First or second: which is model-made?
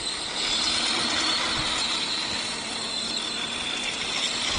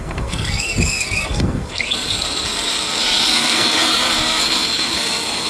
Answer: second